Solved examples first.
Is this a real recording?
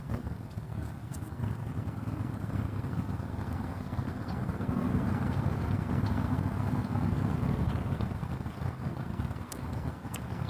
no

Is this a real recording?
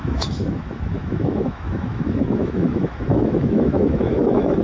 no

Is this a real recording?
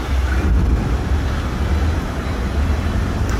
yes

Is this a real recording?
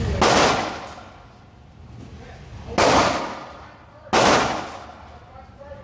yes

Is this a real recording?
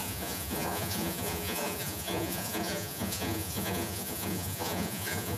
no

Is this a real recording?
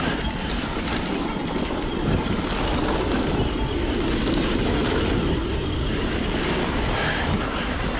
yes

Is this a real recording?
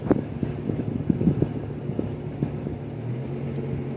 yes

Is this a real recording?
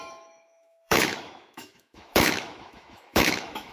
no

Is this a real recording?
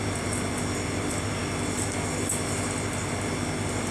yes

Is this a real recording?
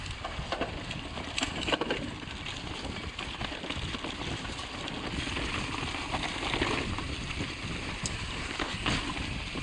yes